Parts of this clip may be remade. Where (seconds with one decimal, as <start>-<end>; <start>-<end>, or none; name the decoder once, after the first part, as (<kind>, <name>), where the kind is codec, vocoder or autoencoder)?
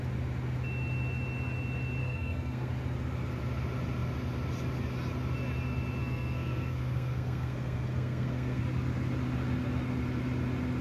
2.0-2.7 (codec, SNAC); 6.0-8.6